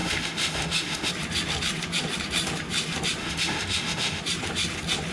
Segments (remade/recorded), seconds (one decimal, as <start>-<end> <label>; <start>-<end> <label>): 0.0-1.1 remade; 1.1-3.2 recorded; 3.2-4.2 remade; 4.2-5.1 recorded

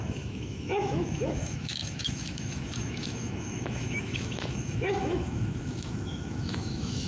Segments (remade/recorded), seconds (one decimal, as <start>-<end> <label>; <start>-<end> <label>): 0.0-7.1 remade

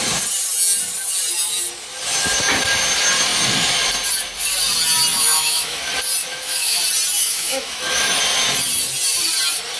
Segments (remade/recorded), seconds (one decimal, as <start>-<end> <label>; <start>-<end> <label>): 0.0-5.1 recorded; 5.1-5.8 remade; 5.8-6.2 recorded; 6.2-6.8 remade; 6.8-7.2 recorded; 7.2-8.2 remade; 8.2-9.8 recorded

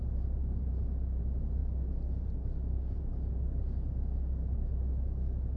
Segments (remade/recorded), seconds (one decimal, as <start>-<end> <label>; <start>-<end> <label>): 0.0-5.6 recorded

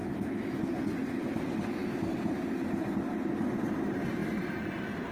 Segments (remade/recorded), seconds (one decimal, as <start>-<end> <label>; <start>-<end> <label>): 0.0-5.1 recorded

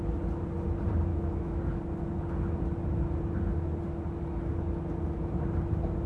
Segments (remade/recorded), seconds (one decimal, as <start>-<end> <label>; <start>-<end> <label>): 0.0-1.1 recorded; 1.1-1.6 remade; 1.6-6.1 recorded